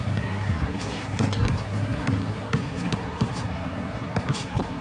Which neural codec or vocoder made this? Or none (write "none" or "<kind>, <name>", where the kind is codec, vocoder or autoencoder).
codec, SNAC